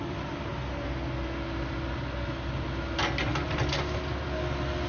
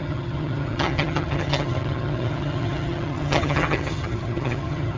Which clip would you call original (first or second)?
first